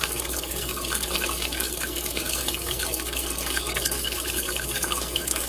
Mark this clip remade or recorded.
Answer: remade